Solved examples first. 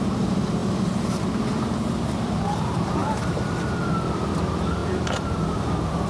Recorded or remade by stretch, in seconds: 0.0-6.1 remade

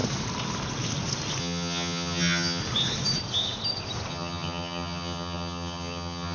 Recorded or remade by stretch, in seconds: 0.0-1.4 recorded; 1.4-2.6 remade; 2.6-4.1 recorded; 4.1-6.3 remade